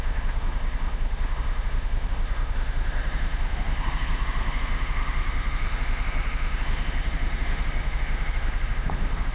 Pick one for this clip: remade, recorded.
remade